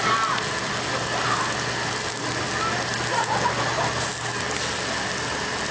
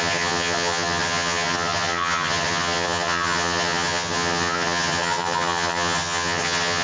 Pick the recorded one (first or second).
first